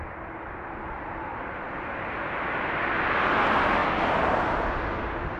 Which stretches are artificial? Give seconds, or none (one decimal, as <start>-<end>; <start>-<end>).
1.3-2.4